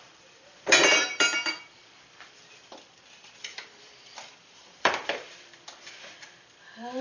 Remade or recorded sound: remade